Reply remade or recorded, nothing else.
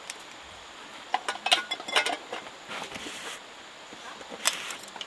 recorded